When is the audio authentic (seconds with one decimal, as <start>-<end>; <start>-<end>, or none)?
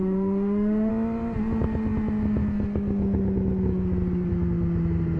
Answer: 0.9-5.2